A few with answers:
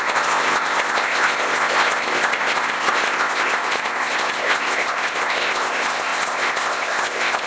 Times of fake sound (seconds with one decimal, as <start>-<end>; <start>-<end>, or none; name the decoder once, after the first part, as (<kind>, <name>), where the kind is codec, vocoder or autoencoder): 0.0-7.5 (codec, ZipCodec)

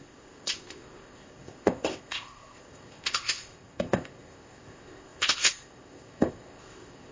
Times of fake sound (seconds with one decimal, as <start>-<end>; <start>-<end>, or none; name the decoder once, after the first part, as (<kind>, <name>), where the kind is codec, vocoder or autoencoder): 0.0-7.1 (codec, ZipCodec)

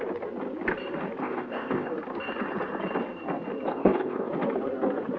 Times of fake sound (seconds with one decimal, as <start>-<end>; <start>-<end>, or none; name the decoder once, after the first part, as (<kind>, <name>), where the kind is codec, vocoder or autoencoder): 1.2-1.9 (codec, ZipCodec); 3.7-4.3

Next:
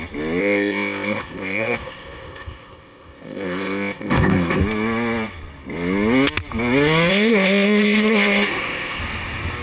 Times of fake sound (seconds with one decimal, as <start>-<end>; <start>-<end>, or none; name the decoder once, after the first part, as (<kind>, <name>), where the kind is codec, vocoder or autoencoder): 0.4-4.6 (codec, ZipCodec); 7.1-9.0